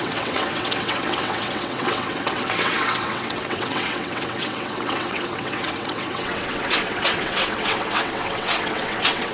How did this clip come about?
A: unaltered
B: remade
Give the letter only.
B